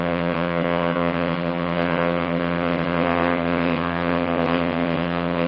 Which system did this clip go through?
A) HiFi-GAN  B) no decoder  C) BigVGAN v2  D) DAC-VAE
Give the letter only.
A